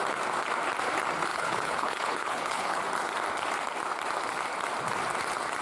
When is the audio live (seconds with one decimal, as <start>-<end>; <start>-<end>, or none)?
0.0-1.3; 2.8-5.6